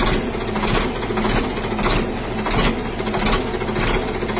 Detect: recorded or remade recorded